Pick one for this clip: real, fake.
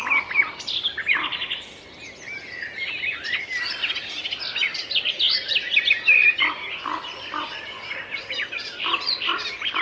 real